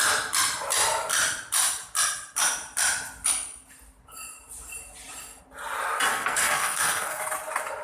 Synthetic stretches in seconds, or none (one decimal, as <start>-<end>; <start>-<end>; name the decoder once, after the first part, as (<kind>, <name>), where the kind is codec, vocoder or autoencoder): 6.1-7.2 (codec, SNAC)